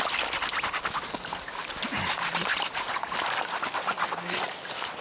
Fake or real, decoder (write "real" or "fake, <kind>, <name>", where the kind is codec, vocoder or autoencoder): real